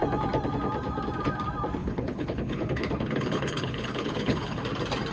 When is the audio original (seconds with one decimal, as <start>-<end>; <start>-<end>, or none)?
0.0-1.8; 4.6-5.1